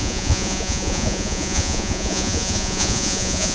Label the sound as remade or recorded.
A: remade